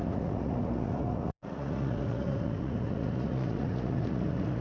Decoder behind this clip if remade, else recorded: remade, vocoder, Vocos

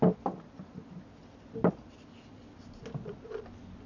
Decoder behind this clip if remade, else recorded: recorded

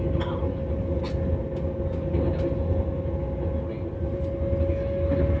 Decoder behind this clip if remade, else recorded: recorded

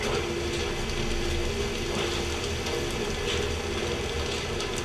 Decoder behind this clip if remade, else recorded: recorded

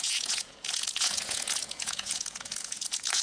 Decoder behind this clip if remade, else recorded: remade, vocoder, Vocos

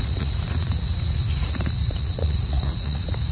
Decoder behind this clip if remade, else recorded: remade, vocoder, Vocos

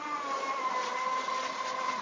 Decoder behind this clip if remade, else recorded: recorded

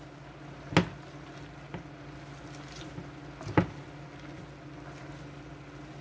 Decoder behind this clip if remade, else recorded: recorded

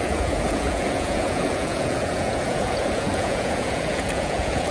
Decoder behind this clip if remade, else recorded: remade, vocoder, Vocos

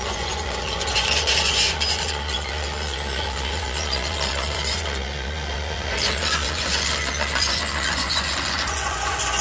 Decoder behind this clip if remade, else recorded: remade, vocoder, Vocos